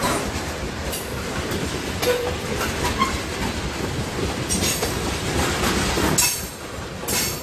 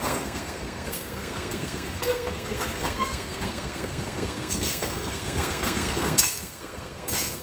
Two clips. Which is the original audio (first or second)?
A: first